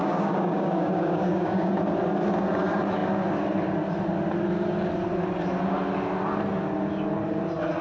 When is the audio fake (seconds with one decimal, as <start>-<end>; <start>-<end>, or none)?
0.0-1.7